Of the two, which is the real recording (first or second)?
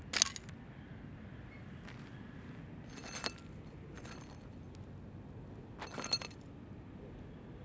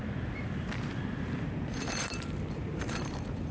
first